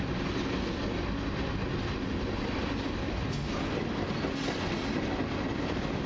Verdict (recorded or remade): recorded